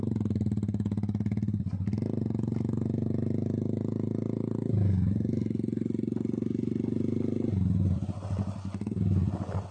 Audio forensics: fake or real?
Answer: real